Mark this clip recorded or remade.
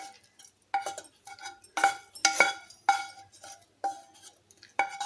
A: recorded